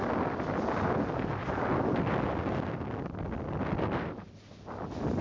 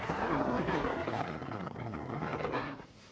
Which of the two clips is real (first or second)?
first